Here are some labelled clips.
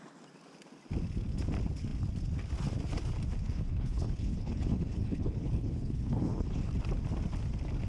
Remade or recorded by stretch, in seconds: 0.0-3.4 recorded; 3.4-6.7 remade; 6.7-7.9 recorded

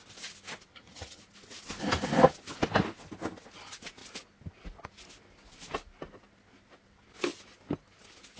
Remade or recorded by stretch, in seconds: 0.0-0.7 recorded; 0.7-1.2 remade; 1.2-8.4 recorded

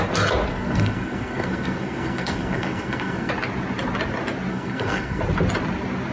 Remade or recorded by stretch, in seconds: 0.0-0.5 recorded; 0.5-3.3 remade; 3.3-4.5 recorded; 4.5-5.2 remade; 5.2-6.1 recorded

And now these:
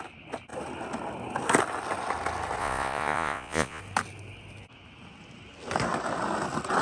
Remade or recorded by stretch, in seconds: 0.0-2.6 recorded; 2.6-3.8 remade; 3.8-6.8 recorded

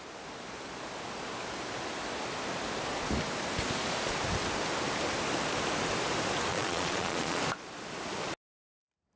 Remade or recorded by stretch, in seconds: 0.0-6.5 recorded; 6.5-7.4 remade; 7.4-9.2 recorded

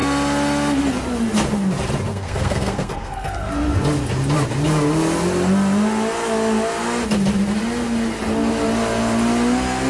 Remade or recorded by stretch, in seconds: 0.0-2.1 recorded; 2.1-3.5 remade; 3.5-9.9 recorded

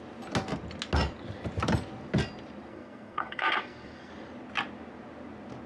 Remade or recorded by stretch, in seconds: 0.0-2.7 recorded; 2.7-4.1 remade; 4.1-5.7 recorded

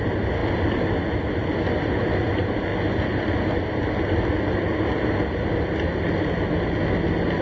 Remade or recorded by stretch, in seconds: 0.0-7.4 recorded